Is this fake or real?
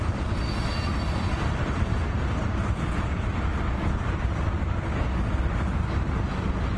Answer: real